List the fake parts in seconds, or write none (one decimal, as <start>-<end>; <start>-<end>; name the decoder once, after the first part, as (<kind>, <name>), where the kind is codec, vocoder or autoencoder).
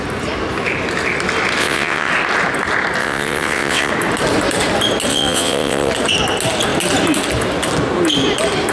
1.6-2.1 (vocoder, WaveNeXt); 3.0-3.9; 5.1-5.9